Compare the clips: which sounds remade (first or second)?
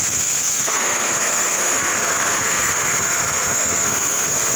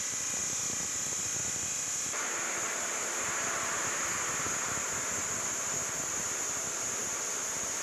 first